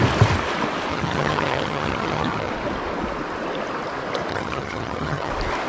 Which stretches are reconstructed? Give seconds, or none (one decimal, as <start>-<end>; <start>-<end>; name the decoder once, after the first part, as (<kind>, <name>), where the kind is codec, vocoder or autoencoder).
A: 0.9-2.5 (vocoder, HiFi-GAN); 4.3-5.3